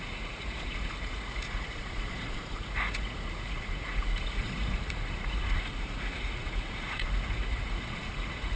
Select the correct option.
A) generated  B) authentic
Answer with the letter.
A